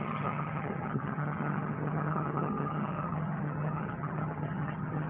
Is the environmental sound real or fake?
fake